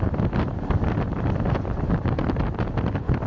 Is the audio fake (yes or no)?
no